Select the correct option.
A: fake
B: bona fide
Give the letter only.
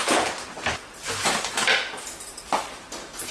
B